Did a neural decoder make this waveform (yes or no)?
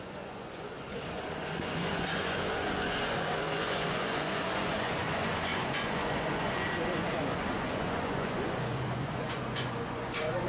yes